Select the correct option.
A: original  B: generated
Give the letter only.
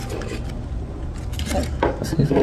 A